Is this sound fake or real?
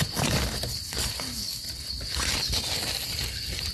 real